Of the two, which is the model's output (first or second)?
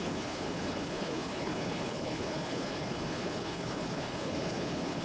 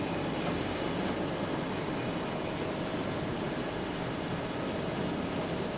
first